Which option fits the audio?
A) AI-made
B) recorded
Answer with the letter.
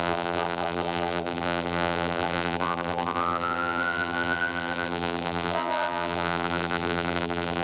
A